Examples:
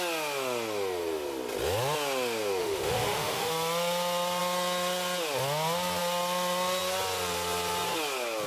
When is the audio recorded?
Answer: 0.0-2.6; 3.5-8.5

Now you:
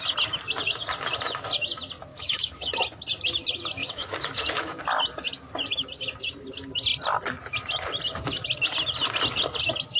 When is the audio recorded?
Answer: 0.0-2.1; 2.7-3.8; 4.8-10.0

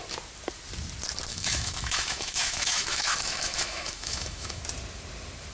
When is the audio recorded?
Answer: 0.0-1.3; 4.6-5.5

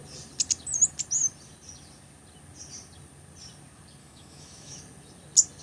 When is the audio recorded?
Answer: 0.0-4.0; 4.8-5.6

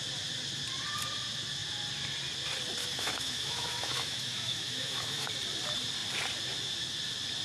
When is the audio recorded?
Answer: 0.0-2.8; 5.3-7.4

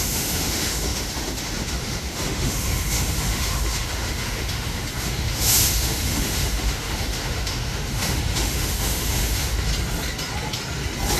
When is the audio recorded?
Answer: 9.7-11.2

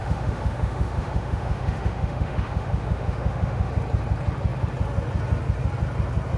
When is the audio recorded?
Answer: 3.7-6.4